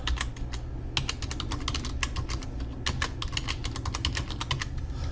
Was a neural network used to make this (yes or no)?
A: no